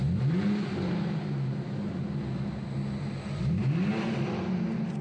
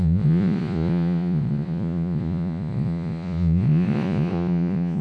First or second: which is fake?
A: second